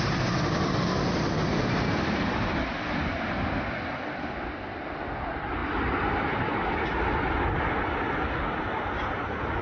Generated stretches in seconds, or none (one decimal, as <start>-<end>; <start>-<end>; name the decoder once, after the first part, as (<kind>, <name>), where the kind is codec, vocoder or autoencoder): none